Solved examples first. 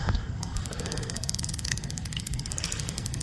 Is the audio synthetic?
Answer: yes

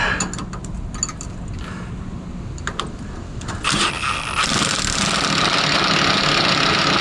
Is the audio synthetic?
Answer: no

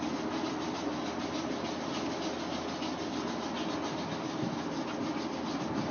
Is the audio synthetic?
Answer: no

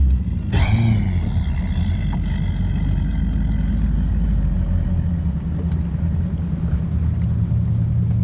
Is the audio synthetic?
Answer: no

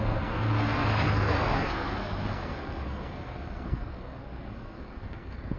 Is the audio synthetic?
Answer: yes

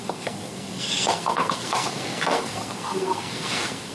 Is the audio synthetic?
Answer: yes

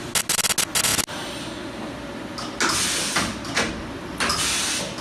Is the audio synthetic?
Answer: no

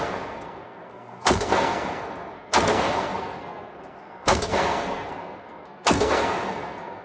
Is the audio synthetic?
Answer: yes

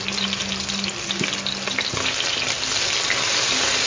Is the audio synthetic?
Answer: no